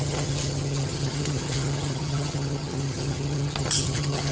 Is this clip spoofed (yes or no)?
yes